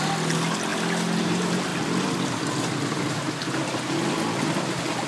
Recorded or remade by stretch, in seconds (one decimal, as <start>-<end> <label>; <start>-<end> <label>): 0.0-5.1 recorded